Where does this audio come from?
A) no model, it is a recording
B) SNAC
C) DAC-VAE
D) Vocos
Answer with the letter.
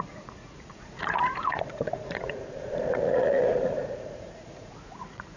D